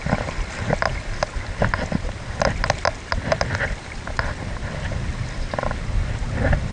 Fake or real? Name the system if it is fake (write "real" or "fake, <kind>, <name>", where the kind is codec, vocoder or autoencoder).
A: real